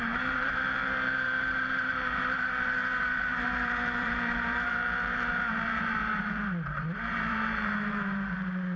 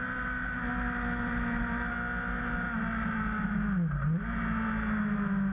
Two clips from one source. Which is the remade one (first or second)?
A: first